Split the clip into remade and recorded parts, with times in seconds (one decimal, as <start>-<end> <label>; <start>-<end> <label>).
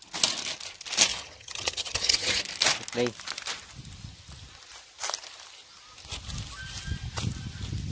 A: 0.0-1.1 recorded; 1.1-2.4 remade; 2.4-7.9 recorded